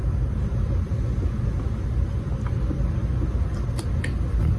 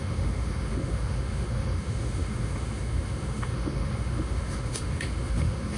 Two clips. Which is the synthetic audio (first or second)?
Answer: second